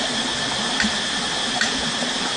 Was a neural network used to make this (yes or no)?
no